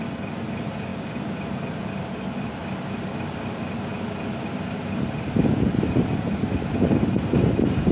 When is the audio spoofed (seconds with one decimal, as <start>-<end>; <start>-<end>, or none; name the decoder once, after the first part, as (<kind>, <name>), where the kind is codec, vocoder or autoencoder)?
none